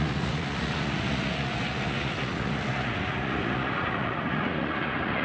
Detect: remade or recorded remade